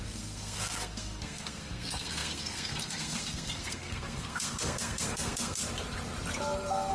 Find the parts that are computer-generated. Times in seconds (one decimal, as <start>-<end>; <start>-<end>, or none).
0.0-5.6